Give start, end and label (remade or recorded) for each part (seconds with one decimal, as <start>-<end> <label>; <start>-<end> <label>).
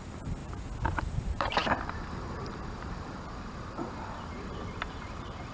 0.0-0.4 remade; 0.4-1.2 recorded; 1.2-5.5 remade